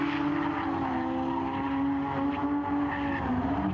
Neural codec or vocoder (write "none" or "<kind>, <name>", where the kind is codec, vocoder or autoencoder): none